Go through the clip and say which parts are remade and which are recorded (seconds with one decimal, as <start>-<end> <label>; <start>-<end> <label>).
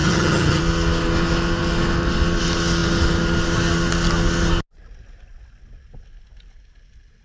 0.0-0.6 remade; 0.6-7.2 recorded